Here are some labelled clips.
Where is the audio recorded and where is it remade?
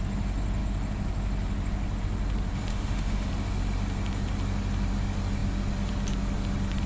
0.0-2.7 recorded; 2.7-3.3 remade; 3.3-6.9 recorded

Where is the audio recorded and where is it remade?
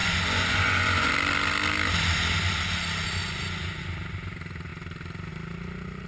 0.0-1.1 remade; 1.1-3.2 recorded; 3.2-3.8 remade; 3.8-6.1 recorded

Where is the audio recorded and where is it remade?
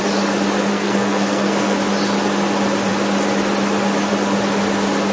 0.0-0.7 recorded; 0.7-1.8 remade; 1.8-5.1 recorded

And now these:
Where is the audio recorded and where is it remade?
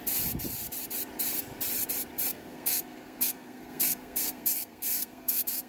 0.0-2.3 recorded; 2.3-5.7 remade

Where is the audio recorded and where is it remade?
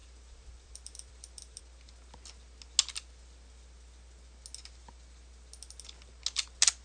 0.0-1.6 remade; 1.6-6.8 recorded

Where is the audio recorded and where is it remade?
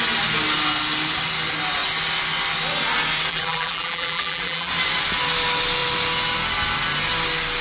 0.0-3.3 recorded; 3.3-4.7 remade; 4.7-7.6 recorded